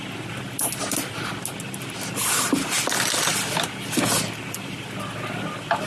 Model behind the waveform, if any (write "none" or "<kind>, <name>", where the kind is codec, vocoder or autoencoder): none